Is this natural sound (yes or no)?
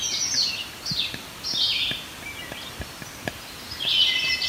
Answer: yes